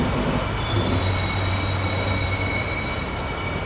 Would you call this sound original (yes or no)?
yes